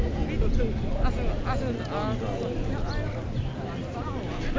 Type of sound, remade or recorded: recorded